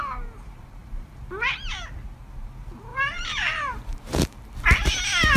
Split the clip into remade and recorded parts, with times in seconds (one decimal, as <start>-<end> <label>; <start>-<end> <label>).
0.0-2.9 recorded; 2.9-4.5 remade; 4.5-5.4 recorded